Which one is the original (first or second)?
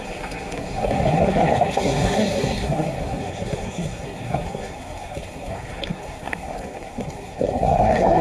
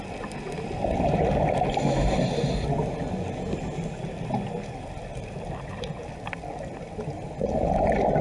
second